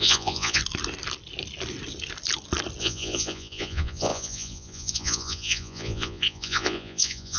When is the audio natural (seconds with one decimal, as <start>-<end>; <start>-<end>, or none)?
0.6-2.8